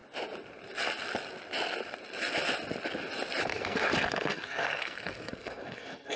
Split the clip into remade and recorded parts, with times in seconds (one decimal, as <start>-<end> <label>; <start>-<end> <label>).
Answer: 0.0-3.4 recorded; 3.4-6.2 remade